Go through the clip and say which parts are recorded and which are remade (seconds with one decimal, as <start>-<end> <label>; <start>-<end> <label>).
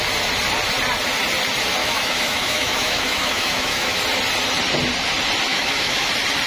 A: 0.0-1.8 recorded; 1.8-4.0 remade; 4.0-5.5 recorded; 5.5-6.1 remade; 6.1-6.5 recorded